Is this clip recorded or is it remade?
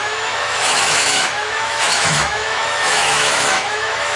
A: remade